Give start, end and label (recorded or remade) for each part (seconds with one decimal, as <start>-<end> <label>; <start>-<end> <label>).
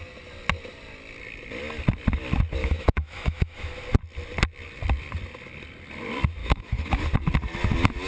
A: 0.0-2.6 recorded; 2.6-3.7 remade; 3.7-6.4 recorded; 6.4-7.0 remade; 7.0-8.1 recorded